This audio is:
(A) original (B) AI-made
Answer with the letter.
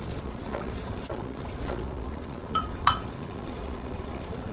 B